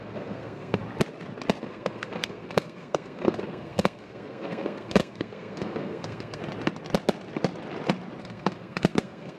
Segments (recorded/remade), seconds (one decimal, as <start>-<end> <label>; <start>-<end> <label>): 0.0-0.8 remade; 0.8-1.6 recorded; 1.6-6.4 remade; 6.4-8.2 recorded; 8.2-9.4 remade